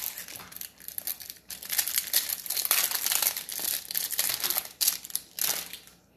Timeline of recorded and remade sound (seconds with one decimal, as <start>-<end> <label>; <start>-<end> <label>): 0.0-3.5 recorded; 3.5-4.5 remade; 4.5-6.2 recorded